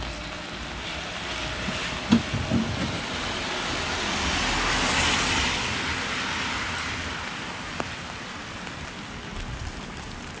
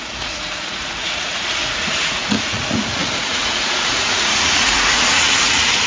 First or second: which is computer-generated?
second